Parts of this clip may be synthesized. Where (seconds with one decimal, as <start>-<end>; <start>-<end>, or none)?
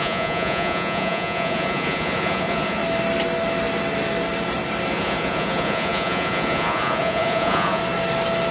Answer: 0.0-2.8; 4.9-7.8